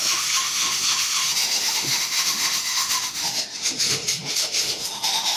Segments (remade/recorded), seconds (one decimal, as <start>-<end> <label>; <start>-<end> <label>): 0.0-5.4 remade